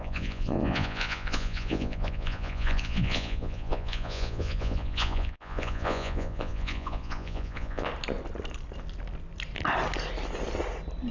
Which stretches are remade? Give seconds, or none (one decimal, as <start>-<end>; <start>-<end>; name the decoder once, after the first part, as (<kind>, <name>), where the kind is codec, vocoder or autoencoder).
0.0-7.9 (vocoder, Vocos)